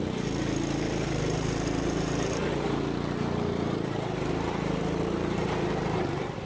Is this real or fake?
fake